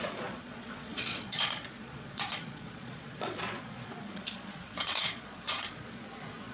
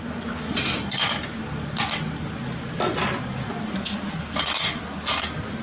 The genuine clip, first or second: second